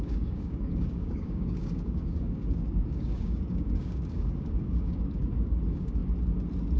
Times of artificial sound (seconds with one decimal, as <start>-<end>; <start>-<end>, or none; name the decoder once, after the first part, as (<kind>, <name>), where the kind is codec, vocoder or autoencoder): 0.0-6.0 (codec, DAC)

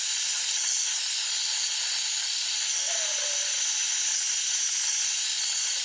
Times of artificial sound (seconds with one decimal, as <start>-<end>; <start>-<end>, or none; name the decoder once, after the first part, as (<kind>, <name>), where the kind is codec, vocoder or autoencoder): none

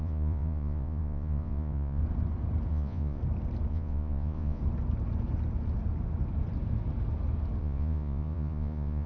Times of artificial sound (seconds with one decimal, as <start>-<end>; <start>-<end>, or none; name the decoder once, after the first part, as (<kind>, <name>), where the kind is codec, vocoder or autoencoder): 0.0-2.0 (vocoder, Vocos); 2.7-3.2; 3.7-4.6; 7.6-9.1